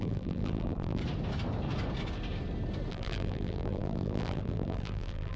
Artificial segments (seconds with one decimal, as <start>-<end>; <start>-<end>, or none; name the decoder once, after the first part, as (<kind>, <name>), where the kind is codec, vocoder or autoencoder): 0.0-1.0 (vocoder, BigVGAN v2); 2.9-5.4